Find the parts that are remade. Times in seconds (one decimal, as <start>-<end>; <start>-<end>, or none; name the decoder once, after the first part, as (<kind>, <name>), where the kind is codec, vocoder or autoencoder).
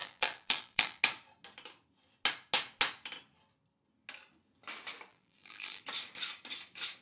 0.0-1.0 (vocoder, BigVGAN v2); 5.1-5.8